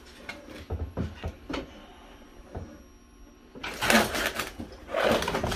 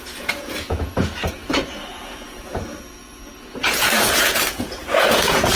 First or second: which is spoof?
second